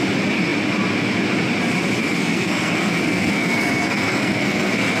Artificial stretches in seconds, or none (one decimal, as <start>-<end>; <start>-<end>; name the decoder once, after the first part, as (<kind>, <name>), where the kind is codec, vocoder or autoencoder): 2.0-5.0 (codec, SNAC)